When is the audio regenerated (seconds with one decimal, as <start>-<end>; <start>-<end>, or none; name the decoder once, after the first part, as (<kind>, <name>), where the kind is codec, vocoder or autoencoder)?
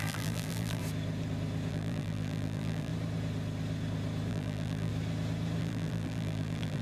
0.0-0.8 (vocoder, BigVGAN v2); 1.7-2.9; 4.3-4.9; 5.6-6.8